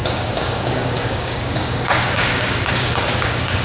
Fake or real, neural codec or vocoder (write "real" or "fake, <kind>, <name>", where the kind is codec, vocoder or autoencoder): fake, codec, DAC